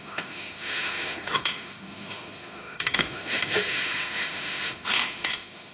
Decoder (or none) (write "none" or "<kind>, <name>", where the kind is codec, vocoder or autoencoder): autoencoder, DAC-VAE